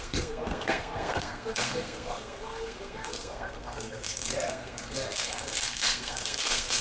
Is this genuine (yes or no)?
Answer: no